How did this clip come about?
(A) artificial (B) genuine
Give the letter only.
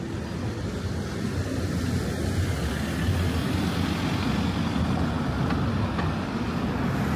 B